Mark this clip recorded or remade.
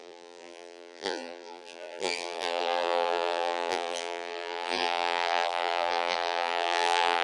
remade